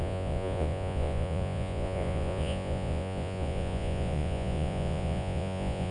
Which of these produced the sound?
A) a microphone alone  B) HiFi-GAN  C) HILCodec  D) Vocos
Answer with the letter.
D